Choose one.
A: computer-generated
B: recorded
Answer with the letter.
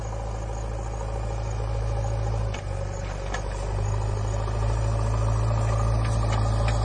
B